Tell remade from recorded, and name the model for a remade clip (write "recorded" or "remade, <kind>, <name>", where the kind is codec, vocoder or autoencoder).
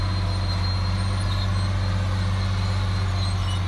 recorded